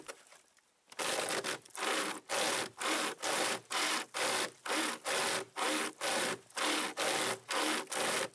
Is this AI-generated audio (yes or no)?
no